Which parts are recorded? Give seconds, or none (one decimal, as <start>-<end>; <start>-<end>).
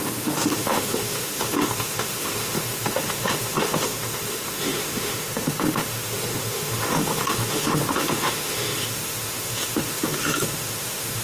none